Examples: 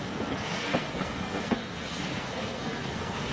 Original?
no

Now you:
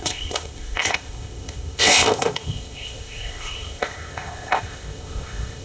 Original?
no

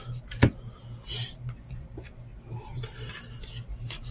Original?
no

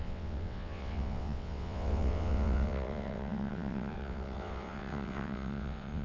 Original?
no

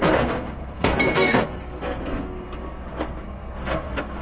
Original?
no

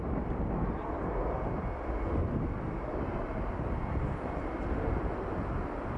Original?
yes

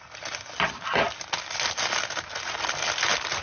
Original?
yes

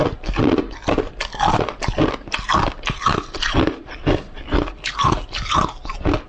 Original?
yes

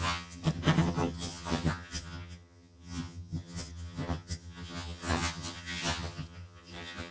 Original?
no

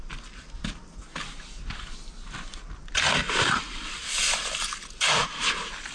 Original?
yes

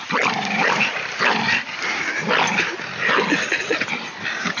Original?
yes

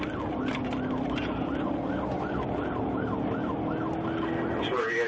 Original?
yes